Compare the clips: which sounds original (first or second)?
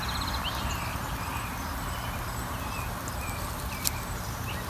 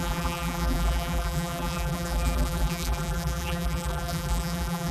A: first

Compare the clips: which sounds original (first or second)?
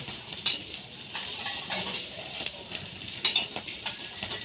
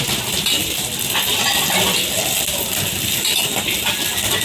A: second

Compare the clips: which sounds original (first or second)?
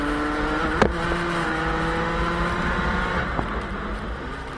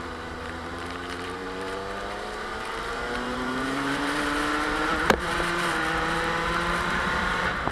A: first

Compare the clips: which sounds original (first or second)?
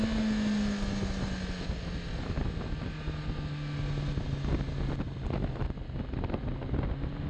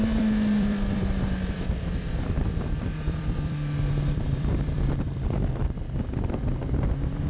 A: first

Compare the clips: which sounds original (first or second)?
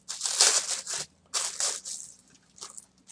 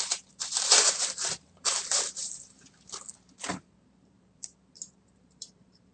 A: first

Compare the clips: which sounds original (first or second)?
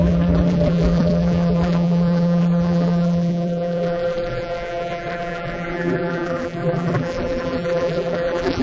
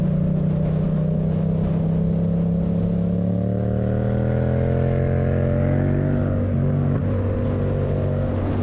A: second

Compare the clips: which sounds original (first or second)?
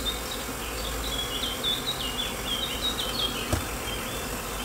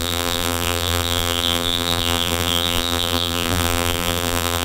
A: first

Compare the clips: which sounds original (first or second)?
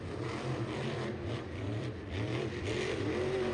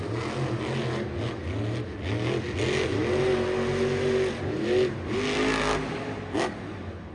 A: second